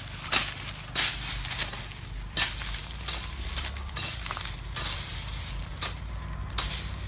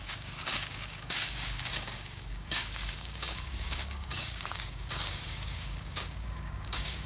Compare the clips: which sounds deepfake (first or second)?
second